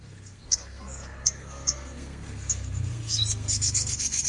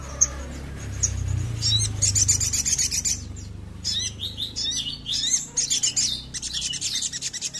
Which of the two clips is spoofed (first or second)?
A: first